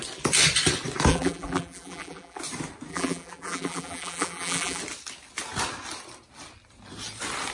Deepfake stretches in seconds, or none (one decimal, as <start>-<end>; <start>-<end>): 1.1-2.4; 2.9-4.8

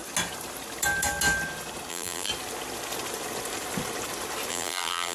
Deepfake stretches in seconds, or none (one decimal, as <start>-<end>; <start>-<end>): 1.9-2.3; 4.5-5.1